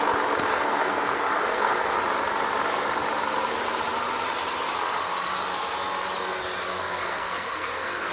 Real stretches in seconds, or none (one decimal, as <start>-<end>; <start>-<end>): 0.0-0.5; 2.0-6.7